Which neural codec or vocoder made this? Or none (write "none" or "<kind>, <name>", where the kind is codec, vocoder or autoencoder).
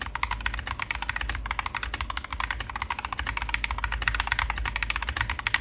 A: none